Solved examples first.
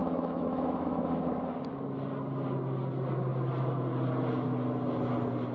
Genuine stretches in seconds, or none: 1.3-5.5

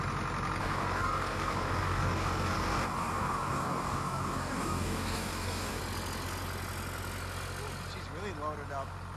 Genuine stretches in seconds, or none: 0.0-0.6; 5.8-9.2

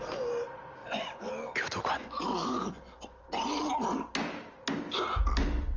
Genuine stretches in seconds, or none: 0.0-0.8; 1.3-1.8; 3.6-5.8

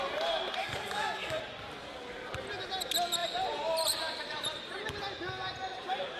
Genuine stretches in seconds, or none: 0.0-0.6; 1.4-6.2